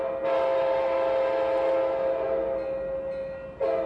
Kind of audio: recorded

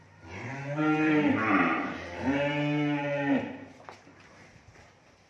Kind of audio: remade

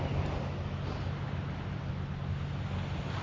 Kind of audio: recorded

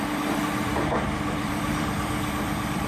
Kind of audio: remade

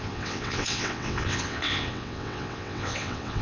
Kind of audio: remade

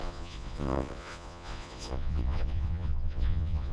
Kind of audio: remade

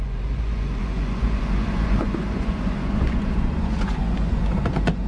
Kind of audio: remade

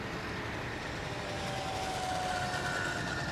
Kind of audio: recorded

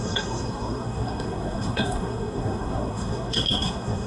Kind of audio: remade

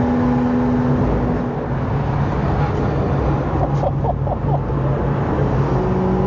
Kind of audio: recorded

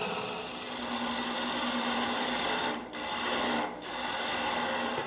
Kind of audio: recorded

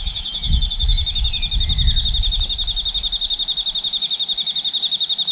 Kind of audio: recorded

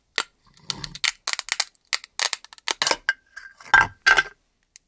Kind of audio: recorded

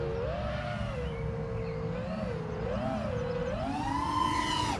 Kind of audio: recorded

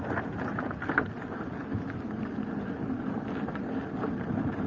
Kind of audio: recorded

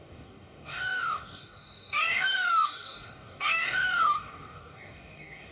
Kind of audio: remade